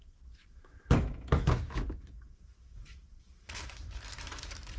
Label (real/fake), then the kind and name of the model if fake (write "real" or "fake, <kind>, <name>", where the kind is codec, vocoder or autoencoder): fake, autoencoder, DAC-VAE